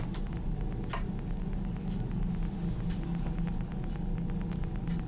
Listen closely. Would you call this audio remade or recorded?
recorded